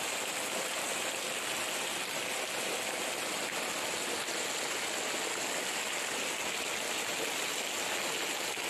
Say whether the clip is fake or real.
real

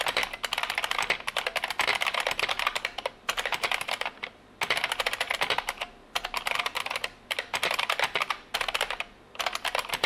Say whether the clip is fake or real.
real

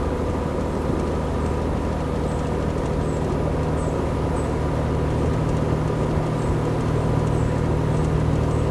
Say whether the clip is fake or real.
real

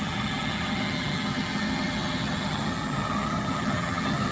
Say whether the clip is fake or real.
fake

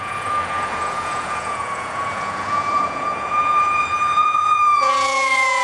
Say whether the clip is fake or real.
fake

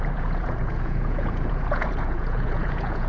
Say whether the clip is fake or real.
fake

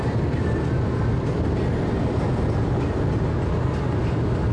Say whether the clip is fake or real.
real